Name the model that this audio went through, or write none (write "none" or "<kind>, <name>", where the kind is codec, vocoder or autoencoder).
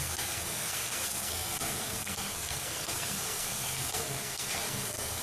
codec, SNAC